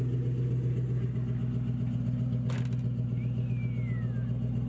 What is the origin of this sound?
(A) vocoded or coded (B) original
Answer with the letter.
B